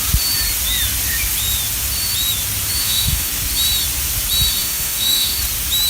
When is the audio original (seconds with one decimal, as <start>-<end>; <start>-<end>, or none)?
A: 0.0-2.8; 3.3-4.6; 5.4-5.9